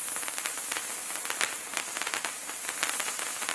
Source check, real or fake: real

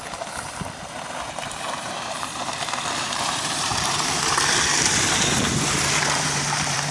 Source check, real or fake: fake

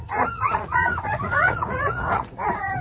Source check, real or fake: fake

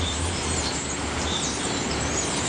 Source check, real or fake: fake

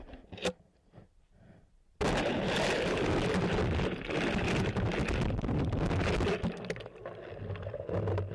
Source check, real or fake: real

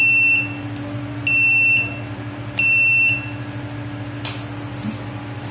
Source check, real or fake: real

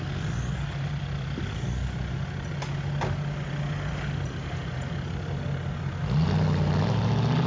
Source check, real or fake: real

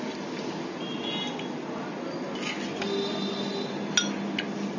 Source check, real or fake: real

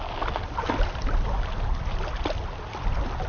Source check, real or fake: real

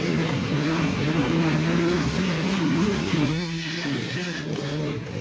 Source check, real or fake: fake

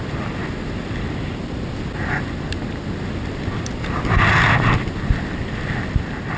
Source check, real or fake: real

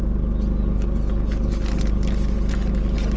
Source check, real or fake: real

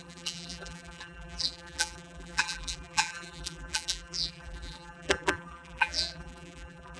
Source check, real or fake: fake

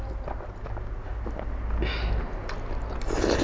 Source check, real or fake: real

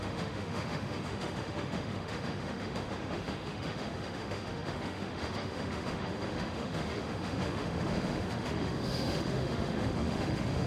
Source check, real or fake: fake